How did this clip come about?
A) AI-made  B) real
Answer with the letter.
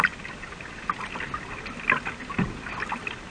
B